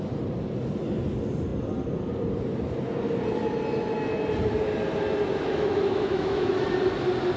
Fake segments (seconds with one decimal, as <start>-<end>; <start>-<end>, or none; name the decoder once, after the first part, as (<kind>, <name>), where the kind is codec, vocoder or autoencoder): 5.5-6.5 (autoencoder, DAC-VAE)